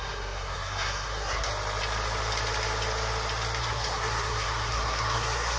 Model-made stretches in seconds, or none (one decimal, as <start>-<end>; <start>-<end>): 0.0-1.5; 3.6-5.6

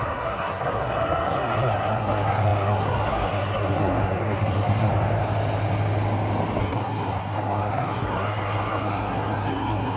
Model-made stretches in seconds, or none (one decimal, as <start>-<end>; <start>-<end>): 0.0-4.9; 6.6-10.0

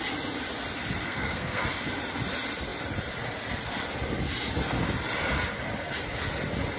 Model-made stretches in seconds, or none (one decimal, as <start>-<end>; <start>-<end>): 1.1-1.6

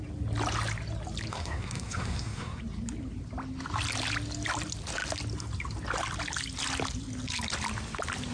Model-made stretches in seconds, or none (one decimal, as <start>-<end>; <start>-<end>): 1.3-2.6